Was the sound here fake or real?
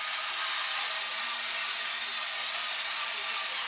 real